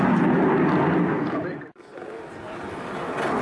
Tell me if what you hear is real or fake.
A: real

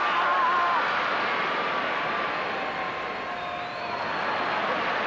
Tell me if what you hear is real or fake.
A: real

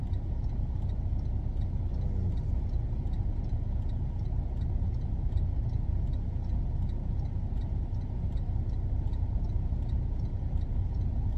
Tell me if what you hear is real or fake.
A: real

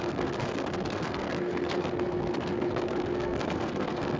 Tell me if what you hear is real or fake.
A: fake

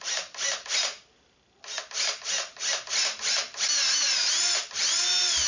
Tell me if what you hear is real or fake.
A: real